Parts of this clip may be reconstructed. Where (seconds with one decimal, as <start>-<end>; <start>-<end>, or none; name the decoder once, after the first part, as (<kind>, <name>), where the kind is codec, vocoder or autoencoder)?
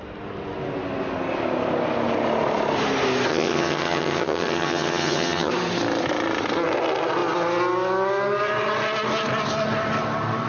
3.3-5.5 (vocoder, HiFi-GAN)